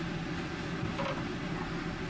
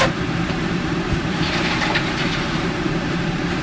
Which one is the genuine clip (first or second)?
first